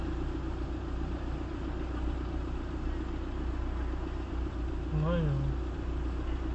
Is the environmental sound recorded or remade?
recorded